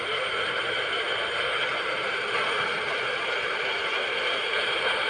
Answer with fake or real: fake